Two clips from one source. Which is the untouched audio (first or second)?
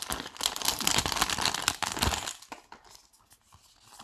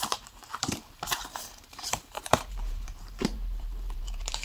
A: first